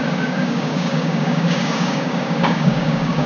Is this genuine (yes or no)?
no